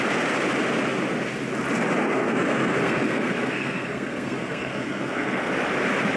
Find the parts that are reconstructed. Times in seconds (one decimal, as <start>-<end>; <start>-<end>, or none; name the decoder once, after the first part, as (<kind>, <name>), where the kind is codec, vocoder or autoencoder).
2.0-5.5 (codec, SNAC)